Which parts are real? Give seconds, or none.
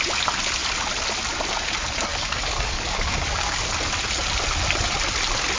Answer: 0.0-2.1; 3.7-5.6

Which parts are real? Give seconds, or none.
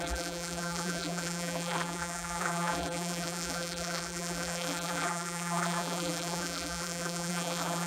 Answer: none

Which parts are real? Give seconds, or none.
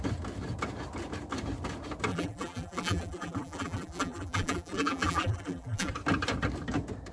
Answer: 0.0-2.1; 5.9-7.1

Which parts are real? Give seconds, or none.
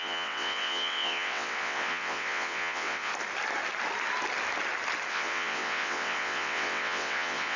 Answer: 3.1-5.1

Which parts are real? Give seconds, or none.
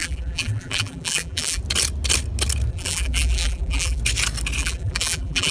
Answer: 1.6-2.7; 4.0-4.6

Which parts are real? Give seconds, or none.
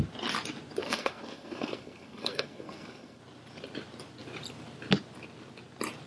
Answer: 0.0-0.8; 3.2-6.1